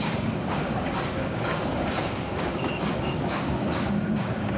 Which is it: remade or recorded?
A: remade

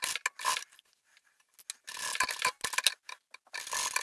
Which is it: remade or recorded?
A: recorded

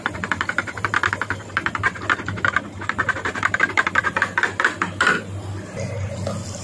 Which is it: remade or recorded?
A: recorded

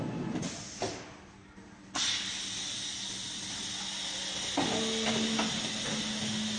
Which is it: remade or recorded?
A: recorded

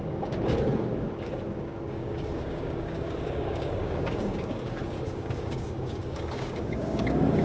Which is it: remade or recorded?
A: remade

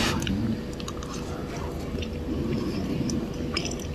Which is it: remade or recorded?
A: recorded